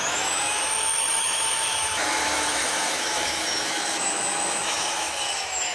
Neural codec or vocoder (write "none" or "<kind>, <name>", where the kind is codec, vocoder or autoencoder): autoencoder, DAC-VAE